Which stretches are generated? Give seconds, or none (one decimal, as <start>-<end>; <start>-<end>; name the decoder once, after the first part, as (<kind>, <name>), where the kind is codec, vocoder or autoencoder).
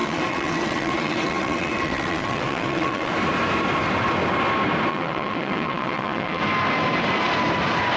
0.0-3.1 (vocoder, WaveNeXt); 4.9-6.4